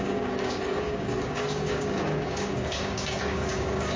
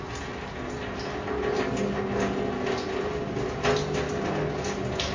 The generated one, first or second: first